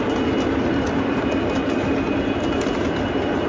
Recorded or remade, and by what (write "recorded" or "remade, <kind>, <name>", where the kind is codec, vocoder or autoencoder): recorded